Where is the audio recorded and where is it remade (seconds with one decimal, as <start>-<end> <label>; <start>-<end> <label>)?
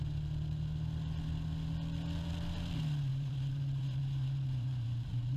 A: 0.0-3.1 recorded; 3.1-5.4 remade